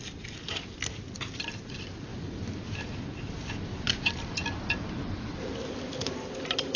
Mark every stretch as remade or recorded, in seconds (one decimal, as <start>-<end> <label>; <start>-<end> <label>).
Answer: 0.0-6.8 recorded